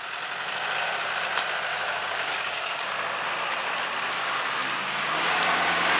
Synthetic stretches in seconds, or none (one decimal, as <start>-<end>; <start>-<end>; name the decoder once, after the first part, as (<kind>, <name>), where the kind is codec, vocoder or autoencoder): 1.7-2.9 (codec, DAC); 4.6-5.4